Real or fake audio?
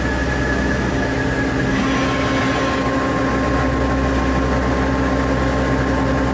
real